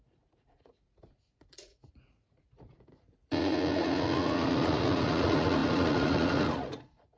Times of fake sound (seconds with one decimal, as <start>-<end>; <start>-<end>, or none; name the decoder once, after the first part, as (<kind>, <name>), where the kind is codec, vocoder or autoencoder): 0.0-7.2 (vocoder, Vocos)